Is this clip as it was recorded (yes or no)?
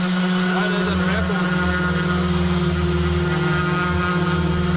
yes